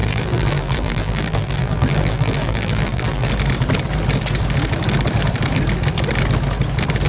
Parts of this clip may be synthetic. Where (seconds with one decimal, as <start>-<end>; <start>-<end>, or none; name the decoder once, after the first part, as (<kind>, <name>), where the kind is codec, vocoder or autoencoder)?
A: 0.0-3.3 (vocoder, BigVGAN v2)